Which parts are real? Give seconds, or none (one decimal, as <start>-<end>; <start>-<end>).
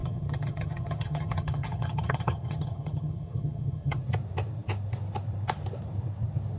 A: 4.0-6.6